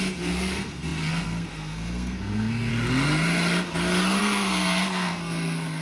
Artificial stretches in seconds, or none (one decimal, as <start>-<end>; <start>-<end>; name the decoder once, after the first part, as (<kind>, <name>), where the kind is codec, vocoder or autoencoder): 0.0-2.7 (codec, SNAC); 4.2-5.8